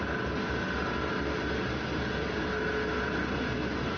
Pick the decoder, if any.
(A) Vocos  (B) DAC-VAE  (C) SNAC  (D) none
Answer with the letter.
D